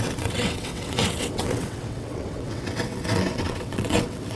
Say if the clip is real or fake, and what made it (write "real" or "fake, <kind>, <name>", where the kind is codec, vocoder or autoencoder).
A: fake, vocoder, WaveNeXt